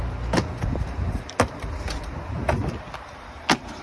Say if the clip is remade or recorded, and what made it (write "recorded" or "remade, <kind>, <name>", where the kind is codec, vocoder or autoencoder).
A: recorded